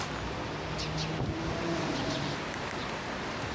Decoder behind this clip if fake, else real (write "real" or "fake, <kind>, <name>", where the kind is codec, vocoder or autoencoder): real